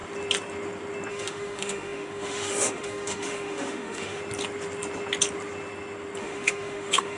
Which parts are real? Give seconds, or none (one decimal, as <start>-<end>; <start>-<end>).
0.0-1.1; 4.2-6.2